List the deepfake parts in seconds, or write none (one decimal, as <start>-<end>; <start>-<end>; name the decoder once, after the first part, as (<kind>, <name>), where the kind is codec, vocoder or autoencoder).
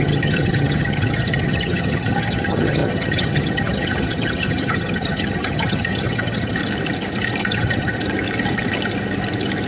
0.0-6.6 (vocoder, HiFi-GAN); 7.4-8.0